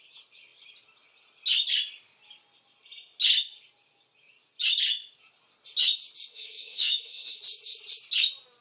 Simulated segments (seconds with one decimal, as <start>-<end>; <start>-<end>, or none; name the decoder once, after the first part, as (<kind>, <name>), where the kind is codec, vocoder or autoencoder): 6.3-7.4 (autoencoder, DAC-VAE)